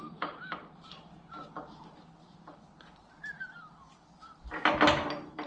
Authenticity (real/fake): real